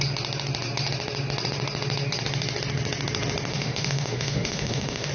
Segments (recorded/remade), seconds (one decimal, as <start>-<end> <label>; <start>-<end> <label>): 0.0-3.5 recorded; 3.5-5.1 remade